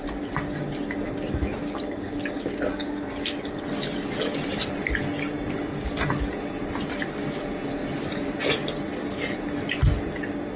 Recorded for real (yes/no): yes